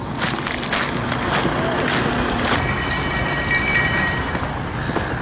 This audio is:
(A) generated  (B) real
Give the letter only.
B